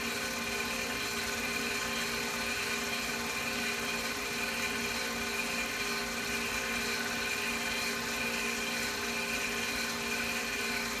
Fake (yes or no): no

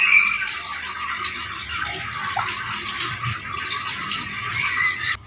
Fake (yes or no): no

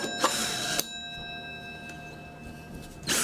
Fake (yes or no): no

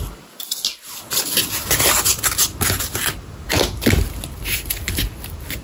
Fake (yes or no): no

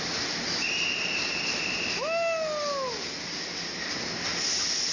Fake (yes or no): no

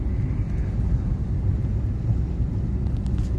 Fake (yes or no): no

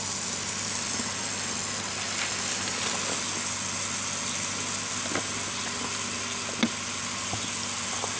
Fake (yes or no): no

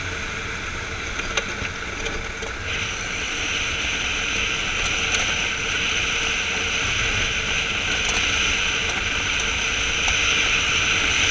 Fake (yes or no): no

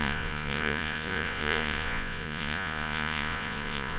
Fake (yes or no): yes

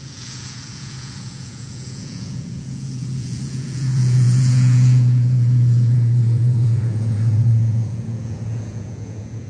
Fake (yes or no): yes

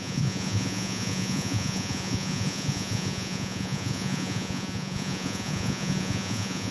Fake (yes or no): yes